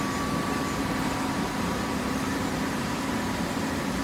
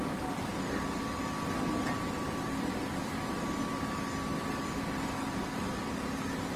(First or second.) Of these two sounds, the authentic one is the second